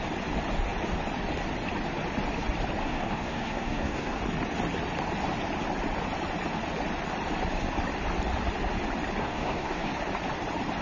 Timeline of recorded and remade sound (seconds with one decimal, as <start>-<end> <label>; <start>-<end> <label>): 0.0-2.8 recorded; 2.8-4.2 remade; 4.2-9.2 recorded; 9.2-9.9 remade; 9.9-10.8 recorded